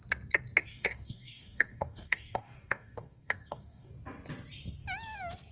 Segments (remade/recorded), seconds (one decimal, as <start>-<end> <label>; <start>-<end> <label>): 0.0-0.6 recorded; 0.6-3.9 remade; 3.9-5.5 recorded